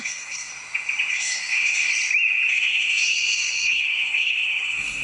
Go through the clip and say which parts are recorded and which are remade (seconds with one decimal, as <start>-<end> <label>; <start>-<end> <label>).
0.0-0.5 remade; 0.5-1.1 recorded; 1.1-1.9 remade; 1.9-2.5 recorded; 2.5-5.0 remade